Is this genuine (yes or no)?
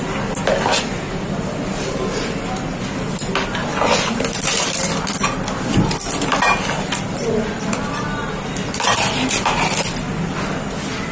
yes